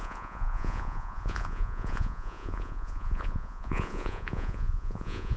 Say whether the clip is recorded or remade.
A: remade